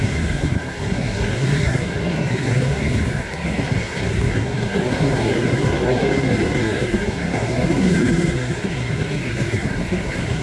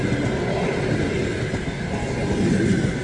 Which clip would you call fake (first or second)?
first